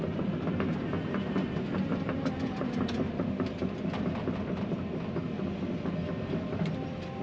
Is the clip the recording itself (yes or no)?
yes